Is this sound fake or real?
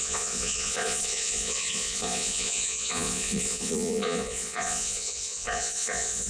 fake